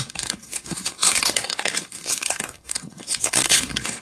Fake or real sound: fake